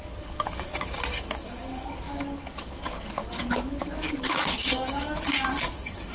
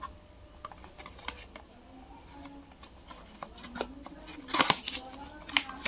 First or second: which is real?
second